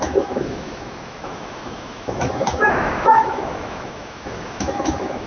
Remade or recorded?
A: remade